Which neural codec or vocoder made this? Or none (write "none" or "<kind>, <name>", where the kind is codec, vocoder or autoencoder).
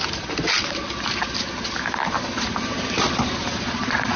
none